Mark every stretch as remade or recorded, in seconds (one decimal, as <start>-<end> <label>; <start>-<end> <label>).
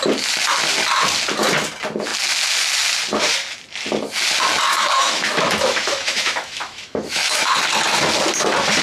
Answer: 0.0-4.7 recorded; 4.7-7.5 remade; 7.5-8.8 recorded